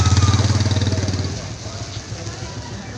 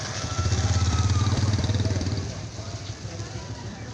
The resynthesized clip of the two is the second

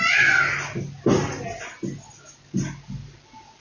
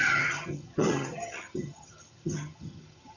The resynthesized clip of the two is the second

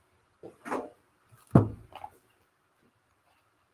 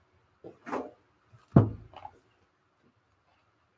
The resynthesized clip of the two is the first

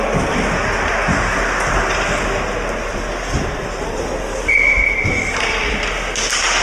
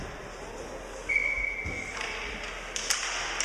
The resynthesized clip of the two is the first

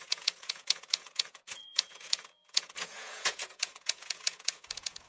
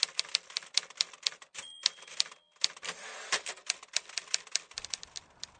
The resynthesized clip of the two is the first